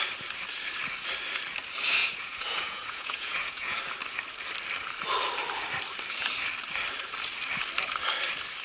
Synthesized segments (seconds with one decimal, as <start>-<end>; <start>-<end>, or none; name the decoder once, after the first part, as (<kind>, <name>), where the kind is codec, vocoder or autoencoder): 2.0-3.8 (vocoder, Vocos)